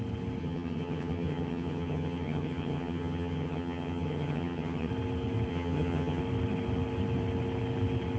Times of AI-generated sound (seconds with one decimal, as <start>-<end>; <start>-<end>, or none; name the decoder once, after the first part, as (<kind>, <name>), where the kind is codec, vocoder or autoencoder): 0.4-4.9 (vocoder, HiFi-GAN); 5.5-6.2